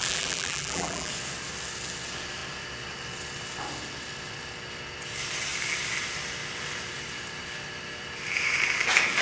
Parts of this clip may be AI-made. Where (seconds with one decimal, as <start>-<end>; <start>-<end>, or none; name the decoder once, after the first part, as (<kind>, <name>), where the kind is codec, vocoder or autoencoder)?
0.0-1.1 (vocoder, BigVGAN v2)

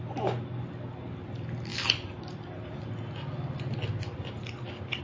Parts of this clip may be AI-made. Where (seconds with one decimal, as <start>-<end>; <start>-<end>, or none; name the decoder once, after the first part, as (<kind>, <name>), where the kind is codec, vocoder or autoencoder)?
none

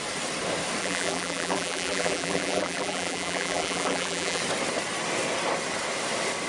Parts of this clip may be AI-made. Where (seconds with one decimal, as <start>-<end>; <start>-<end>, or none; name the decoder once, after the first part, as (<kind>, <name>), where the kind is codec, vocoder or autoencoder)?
0.8-4.4 (vocoder, BigVGAN v2)

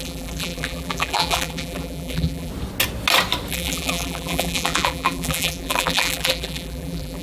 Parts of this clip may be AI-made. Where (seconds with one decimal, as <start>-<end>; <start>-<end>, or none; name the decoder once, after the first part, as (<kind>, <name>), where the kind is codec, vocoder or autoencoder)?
0.0-2.5 (vocoder, BigVGAN v2); 3.5-7.2

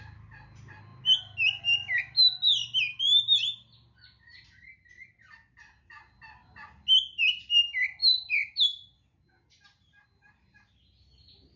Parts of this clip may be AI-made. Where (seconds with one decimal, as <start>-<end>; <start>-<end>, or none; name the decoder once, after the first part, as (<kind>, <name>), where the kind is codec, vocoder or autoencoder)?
none